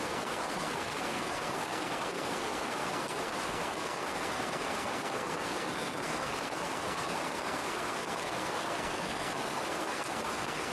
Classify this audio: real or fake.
fake